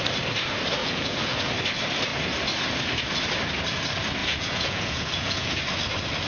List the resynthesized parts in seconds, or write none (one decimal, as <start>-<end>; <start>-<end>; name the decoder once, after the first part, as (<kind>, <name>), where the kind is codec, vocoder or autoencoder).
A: 0.8-1.5 (vocoder, Vocos); 4.2-5.6